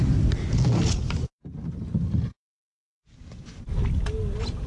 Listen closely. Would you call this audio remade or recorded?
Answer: recorded